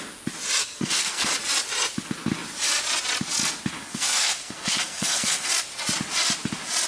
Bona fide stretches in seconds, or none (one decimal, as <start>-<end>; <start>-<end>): 0.0-0.6; 1.3-3.9; 5.5-6.9